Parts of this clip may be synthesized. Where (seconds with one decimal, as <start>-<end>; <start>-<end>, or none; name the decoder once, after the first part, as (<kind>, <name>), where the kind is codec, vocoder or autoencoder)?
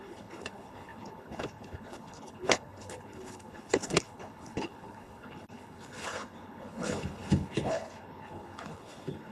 0.0-9.3 (codec, HILCodec)